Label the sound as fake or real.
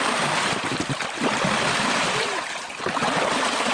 real